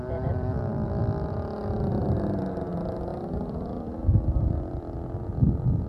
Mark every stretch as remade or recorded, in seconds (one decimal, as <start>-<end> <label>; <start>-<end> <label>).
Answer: 0.0-5.9 recorded